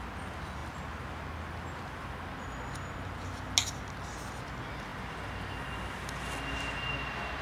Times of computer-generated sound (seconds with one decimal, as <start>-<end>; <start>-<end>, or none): none